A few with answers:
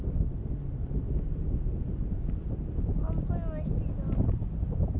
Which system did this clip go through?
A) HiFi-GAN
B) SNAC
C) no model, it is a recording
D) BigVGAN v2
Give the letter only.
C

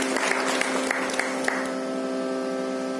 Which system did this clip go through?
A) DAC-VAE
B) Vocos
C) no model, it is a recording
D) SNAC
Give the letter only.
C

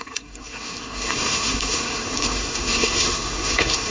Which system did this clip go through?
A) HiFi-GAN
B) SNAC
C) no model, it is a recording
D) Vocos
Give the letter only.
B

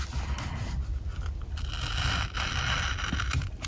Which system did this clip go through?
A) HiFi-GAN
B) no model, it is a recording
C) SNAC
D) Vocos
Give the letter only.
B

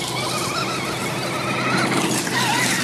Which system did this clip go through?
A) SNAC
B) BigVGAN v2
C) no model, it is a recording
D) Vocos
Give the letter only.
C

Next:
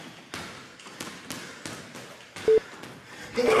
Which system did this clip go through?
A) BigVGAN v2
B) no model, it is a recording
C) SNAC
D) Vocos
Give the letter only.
B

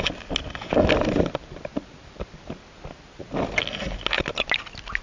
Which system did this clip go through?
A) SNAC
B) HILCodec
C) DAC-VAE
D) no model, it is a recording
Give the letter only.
D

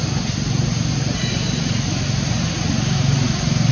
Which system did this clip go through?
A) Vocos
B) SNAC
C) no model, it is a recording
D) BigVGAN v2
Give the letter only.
C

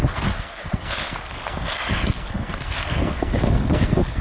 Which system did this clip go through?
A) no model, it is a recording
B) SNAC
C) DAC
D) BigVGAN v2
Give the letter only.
B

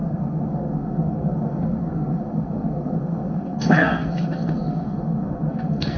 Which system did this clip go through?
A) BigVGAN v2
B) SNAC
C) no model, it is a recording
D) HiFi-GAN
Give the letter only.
B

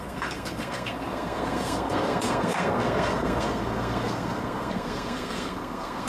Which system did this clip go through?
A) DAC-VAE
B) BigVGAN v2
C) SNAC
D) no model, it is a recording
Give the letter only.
C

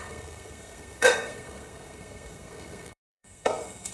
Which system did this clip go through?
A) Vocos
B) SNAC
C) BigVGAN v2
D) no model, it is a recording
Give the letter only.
B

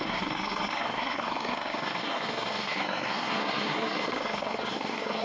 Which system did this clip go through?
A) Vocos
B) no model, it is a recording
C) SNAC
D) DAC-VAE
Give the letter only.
C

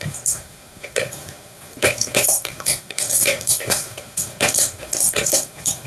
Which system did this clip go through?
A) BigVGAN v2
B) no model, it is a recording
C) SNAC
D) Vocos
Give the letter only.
C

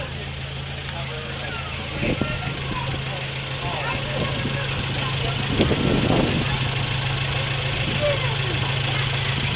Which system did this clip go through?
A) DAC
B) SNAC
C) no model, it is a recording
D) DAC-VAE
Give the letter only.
C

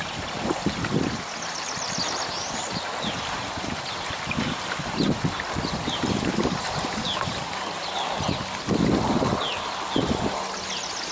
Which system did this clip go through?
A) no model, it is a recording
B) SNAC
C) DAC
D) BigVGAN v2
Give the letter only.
A